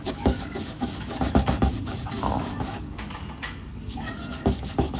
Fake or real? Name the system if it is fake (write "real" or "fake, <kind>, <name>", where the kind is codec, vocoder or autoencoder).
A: fake, codec, DAC